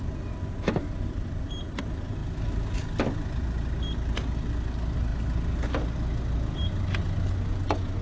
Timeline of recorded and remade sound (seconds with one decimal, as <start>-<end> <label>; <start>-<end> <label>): 0.0-8.0 recorded